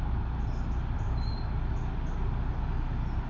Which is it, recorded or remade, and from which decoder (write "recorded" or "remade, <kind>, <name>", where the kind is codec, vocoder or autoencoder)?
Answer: recorded